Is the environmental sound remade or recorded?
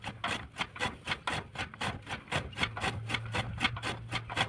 recorded